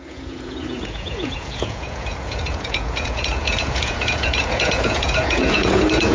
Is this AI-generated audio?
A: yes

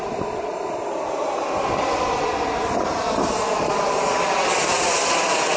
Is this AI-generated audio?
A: no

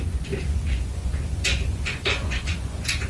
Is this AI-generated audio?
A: yes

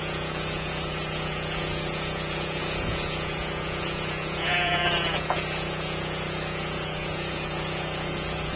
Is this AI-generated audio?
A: yes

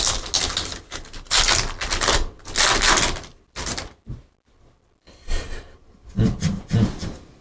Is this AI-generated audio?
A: no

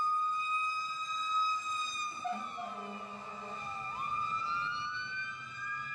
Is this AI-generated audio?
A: no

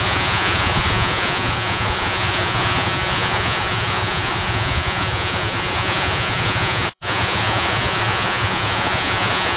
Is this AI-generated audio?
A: yes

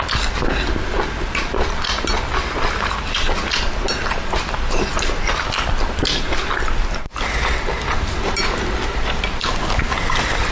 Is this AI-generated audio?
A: no